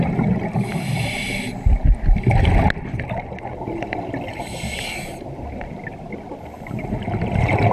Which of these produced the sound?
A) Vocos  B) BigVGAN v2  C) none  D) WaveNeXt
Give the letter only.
C